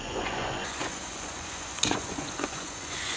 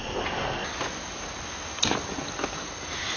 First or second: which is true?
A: second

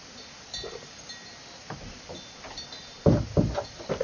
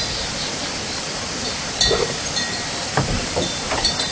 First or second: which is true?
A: first